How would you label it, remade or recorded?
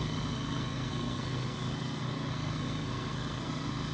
remade